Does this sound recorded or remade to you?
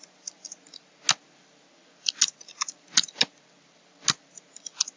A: recorded